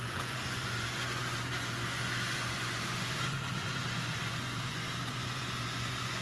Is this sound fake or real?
fake